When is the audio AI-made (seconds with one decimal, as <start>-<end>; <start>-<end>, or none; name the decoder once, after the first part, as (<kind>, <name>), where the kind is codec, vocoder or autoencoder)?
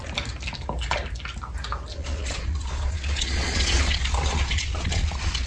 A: 1.9-5.5 (vocoder, Vocos)